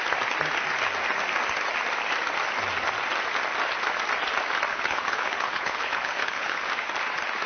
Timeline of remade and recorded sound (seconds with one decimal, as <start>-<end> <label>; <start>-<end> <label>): 0.0-4.7 recorded; 4.7-6.6 remade; 6.6-7.5 recorded